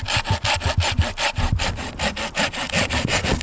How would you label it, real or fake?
real